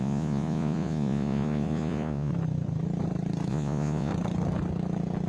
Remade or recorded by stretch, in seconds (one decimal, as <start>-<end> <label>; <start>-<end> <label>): 0.0-2.3 remade; 2.3-3.5 recorded; 3.5-4.1 remade; 4.1-5.3 recorded